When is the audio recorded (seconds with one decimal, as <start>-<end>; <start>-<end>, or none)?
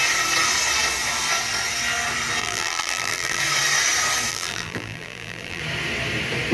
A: 0.0-2.4; 3.4-4.3; 5.6-6.5